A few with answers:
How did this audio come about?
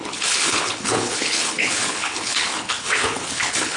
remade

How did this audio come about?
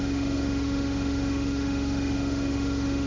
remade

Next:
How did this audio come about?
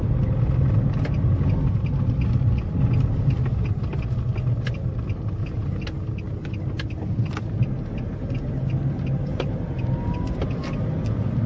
recorded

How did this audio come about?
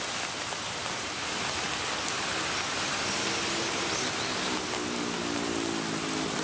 recorded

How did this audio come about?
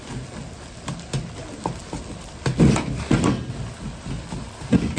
recorded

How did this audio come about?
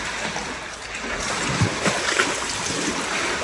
recorded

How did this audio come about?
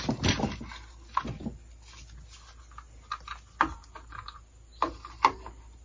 recorded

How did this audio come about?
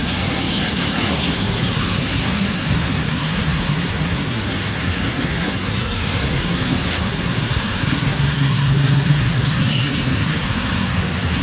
remade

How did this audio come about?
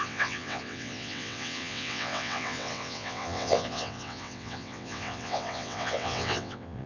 remade